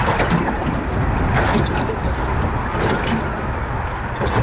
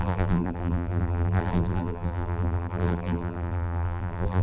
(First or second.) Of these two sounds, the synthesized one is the second